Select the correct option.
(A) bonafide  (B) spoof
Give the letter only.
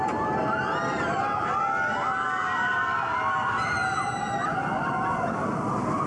A